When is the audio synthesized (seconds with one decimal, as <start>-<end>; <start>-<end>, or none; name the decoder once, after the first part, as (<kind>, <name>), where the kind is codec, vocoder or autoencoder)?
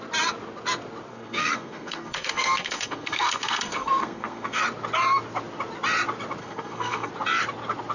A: 1.1-4.6 (codec, SNAC); 6.4-7.1